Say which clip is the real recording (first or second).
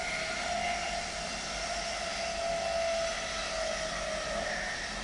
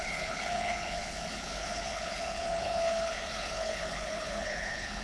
first